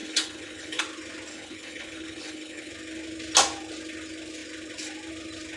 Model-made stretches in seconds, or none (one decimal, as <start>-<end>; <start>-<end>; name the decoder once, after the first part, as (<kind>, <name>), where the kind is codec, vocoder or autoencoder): 0.0-0.8 (codec, HILCodec); 1.3-2.7